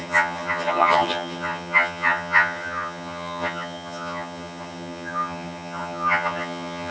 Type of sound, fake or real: fake